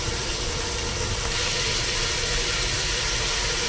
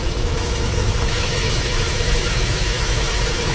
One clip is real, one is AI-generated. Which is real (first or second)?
first